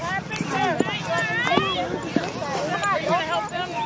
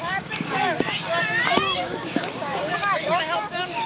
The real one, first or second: first